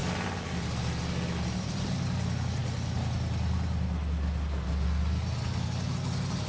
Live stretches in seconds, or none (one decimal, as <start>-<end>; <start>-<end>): 0.0-6.5